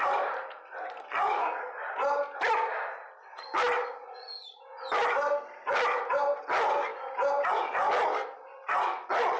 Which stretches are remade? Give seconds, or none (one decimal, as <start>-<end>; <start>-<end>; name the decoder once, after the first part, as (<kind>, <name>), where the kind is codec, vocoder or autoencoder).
none